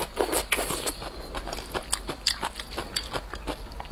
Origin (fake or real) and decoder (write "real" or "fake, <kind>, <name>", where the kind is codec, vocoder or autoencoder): real